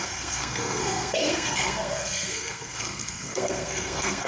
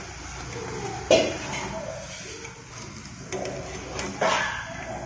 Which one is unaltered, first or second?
second